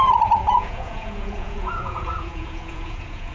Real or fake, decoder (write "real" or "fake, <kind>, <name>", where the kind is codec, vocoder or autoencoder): fake, vocoder, Vocos